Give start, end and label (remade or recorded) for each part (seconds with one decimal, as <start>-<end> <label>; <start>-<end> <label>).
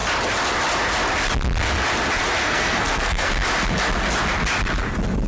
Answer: 0.0-2.4 recorded; 2.4-3.3 remade; 3.3-5.3 recorded